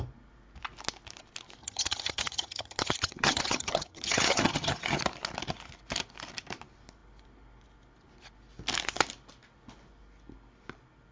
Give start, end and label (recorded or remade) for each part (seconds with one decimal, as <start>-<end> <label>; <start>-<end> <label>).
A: 0.0-1.6 recorded; 1.6-5.0 remade; 5.0-11.1 recorded